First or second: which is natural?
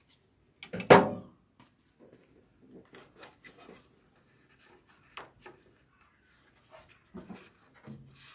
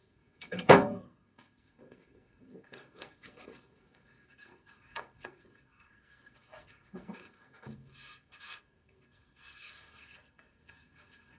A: first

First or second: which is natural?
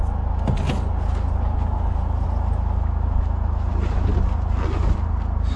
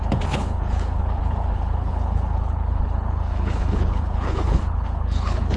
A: first